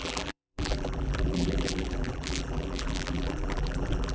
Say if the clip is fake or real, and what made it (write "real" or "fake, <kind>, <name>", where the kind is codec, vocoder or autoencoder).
fake, vocoder, BigVGAN v2